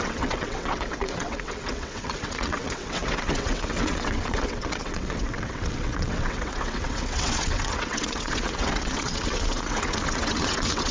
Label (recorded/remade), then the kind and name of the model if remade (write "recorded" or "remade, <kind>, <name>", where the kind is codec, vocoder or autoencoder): remade, vocoder, WaveNeXt